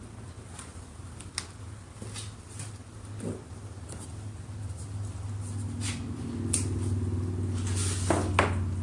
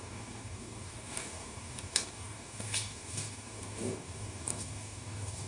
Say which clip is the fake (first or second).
second